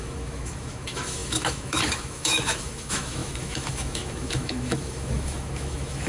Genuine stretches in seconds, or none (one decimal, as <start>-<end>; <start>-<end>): none